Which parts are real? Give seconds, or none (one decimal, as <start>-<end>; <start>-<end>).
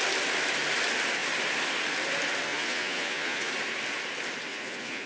0.0-2.5; 3.5-4.5